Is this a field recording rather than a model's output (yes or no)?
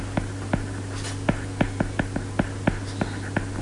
yes